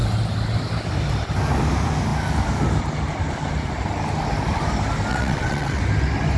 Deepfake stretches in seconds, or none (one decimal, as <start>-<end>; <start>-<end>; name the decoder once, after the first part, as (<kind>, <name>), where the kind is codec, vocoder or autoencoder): 5.1-5.8 (vocoder, WaveNeXt)